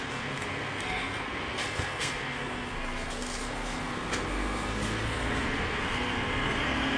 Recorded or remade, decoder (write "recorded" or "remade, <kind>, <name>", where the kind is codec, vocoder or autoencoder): remade, codec, SNAC